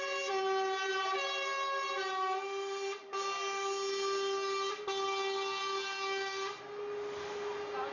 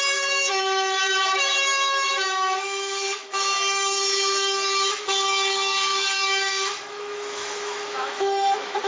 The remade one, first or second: second